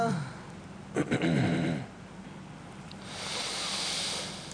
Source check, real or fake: real